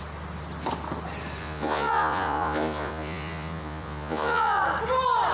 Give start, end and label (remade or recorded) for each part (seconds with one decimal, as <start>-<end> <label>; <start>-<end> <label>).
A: 0.0-1.4 recorded; 1.4-4.6 remade; 4.6-5.3 recorded